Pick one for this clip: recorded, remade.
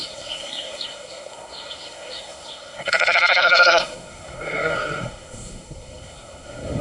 remade